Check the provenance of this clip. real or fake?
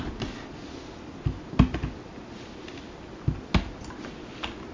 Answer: real